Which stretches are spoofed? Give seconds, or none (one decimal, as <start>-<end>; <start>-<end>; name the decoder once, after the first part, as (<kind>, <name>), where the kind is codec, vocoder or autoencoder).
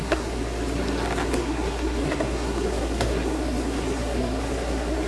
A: 0.0-0.4 (codec, SNAC); 1.3-5.1